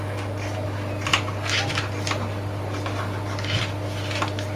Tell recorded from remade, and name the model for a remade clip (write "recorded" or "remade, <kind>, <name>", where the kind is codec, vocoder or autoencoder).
recorded